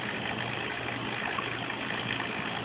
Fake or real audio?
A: real